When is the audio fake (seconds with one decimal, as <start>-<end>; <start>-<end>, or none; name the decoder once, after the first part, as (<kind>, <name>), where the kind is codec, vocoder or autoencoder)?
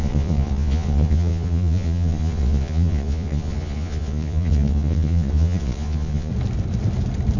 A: 0.0-6.3 (vocoder, Vocos)